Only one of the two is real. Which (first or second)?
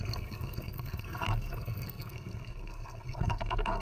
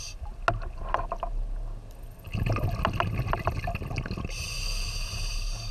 second